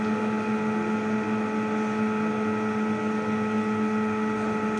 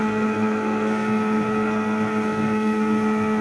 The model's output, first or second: second